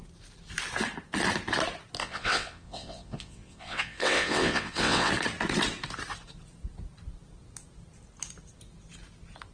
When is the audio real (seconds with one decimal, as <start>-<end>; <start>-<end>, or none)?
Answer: 0.0-2.0; 5.1-9.5